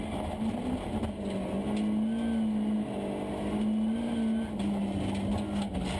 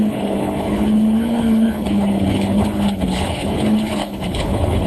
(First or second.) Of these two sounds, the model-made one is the second